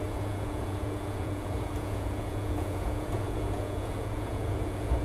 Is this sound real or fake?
fake